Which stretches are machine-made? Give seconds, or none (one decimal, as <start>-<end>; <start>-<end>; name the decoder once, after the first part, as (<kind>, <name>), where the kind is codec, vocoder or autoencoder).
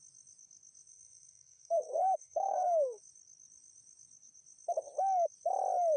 0.9-3.0 (codec, SNAC)